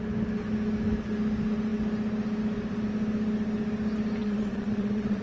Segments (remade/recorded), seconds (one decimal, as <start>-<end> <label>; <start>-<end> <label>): 0.0-4.2 recorded; 4.2-5.2 remade